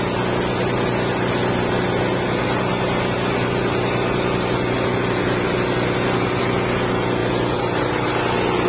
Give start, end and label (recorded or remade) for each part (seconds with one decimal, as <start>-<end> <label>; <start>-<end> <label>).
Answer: 0.0-8.7 recorded